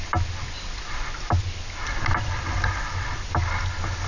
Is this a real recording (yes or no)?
yes